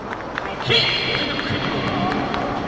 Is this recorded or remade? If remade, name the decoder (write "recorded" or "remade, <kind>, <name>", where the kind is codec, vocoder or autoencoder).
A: recorded